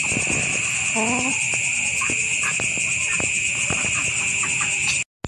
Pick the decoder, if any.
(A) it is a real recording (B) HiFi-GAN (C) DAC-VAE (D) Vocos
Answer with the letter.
A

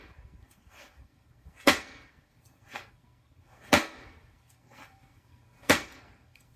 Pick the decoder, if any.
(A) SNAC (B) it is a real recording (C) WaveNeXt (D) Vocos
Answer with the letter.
A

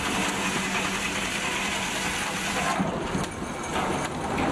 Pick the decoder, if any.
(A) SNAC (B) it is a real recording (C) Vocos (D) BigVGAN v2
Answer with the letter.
B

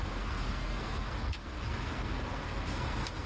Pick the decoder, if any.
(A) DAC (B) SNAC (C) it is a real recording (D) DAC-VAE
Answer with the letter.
B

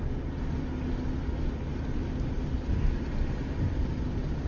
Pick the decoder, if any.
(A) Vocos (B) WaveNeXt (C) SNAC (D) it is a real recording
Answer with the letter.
D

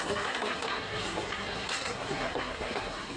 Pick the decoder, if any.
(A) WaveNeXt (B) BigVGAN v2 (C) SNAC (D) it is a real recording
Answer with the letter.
C